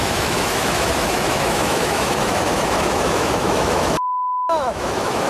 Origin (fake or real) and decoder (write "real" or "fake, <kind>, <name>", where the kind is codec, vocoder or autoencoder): fake, autoencoder, DAC-VAE